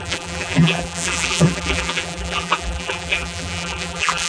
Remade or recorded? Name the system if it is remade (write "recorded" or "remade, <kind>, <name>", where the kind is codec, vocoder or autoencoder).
remade, vocoder, BigVGAN v2